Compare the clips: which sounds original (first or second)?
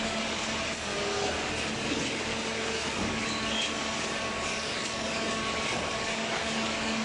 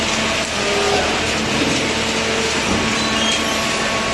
second